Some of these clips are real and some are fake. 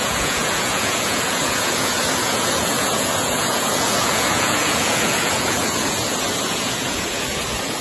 fake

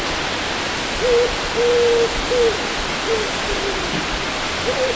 real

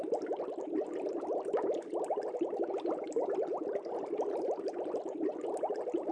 real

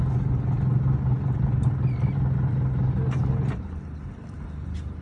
real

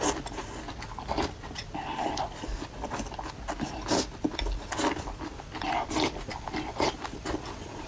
real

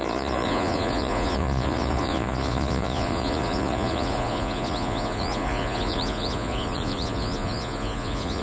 fake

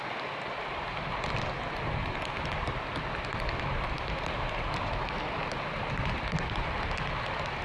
real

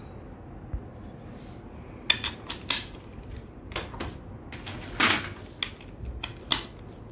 real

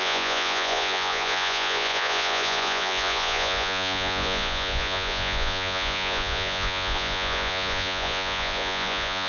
fake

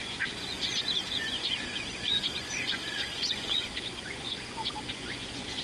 fake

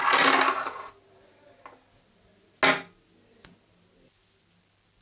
real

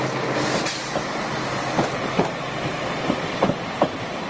real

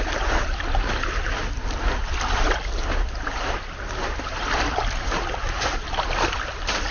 real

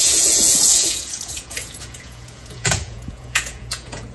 fake